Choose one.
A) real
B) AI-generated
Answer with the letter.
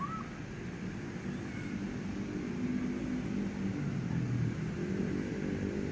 A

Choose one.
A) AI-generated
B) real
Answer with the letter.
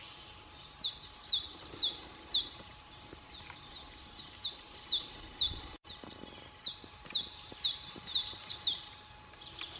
A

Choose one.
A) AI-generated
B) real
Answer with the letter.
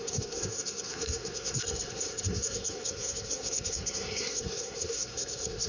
A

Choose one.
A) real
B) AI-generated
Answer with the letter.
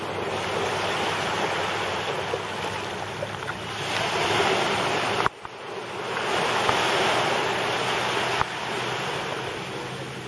A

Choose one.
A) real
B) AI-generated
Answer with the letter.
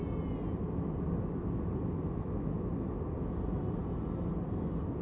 A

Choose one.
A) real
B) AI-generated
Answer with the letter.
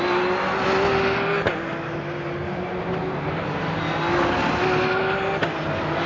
A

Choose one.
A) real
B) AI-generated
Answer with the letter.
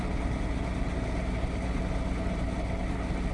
A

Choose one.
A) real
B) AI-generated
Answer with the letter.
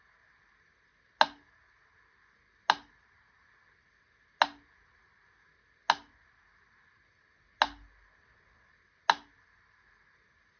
A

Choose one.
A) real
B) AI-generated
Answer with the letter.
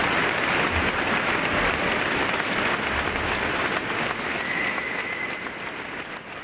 A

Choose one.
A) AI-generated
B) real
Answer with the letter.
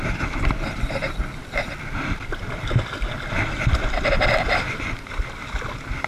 B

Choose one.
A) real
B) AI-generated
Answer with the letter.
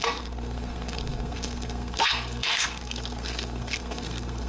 B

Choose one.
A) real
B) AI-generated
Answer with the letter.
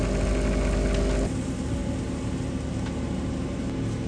A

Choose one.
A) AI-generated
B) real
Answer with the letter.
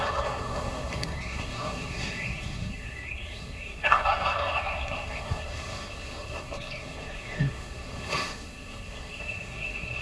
A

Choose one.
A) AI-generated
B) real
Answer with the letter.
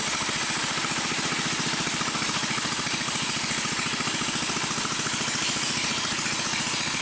B